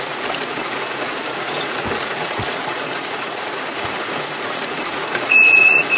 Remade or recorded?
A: remade